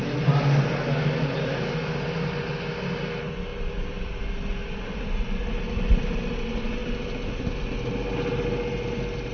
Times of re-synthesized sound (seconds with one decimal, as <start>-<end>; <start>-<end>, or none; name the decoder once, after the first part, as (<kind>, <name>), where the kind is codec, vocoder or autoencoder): none